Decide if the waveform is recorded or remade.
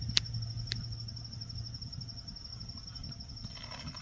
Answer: recorded